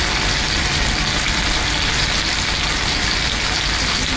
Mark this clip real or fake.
real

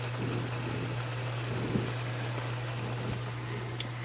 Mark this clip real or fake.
real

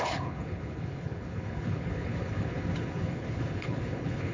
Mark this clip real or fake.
fake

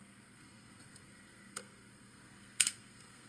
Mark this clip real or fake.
fake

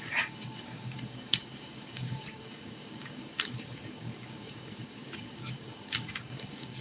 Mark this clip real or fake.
fake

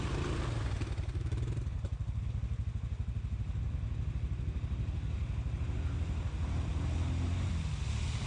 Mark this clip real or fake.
real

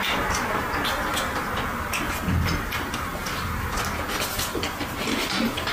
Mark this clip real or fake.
real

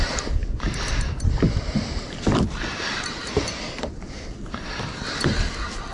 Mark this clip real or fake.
real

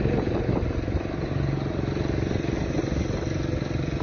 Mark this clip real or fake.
real